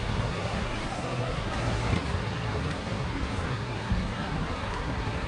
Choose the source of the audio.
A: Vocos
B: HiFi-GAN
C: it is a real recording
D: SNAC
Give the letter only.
D